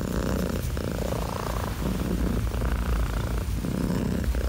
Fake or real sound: real